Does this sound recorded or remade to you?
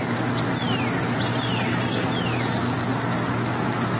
recorded